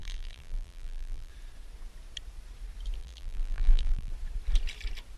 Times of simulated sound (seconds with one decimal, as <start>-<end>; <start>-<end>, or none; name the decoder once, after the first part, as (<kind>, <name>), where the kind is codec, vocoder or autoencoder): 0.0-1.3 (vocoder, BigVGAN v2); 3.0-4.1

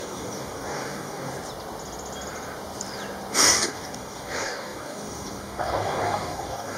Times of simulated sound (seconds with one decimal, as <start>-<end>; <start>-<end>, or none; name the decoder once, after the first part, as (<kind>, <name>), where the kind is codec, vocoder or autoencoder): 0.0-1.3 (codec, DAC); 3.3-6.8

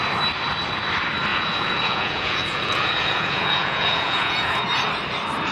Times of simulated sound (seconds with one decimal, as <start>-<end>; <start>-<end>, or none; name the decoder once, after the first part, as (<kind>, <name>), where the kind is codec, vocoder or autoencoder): 1.3-4.6 (vocoder, Vocos)

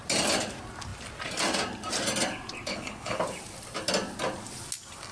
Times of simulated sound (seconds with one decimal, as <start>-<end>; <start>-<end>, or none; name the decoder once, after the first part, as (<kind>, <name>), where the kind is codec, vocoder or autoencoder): 2.7-3.2 (codec, HILCodec)

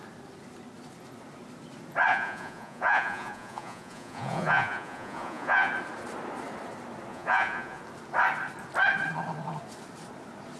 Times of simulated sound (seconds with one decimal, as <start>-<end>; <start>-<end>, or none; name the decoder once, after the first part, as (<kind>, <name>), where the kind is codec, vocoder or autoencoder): 2.1-5.7 (vocoder, Vocos); 7.1-7.8